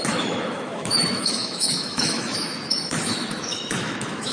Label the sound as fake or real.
fake